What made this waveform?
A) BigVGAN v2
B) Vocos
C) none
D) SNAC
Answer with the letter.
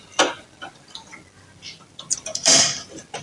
A